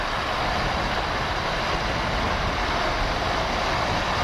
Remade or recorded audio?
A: recorded